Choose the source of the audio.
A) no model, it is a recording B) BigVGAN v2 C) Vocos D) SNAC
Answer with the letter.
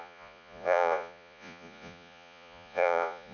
C